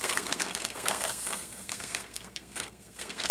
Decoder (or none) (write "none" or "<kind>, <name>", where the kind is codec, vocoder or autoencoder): codec, SNAC